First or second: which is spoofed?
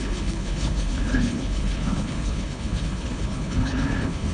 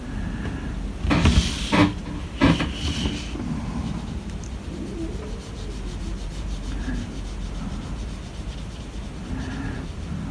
first